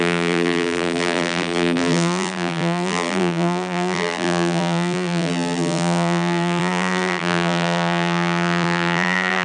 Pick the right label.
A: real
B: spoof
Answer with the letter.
B